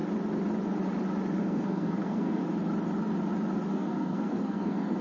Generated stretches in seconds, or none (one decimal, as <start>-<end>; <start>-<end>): 1.4-2.4; 3.7-5.0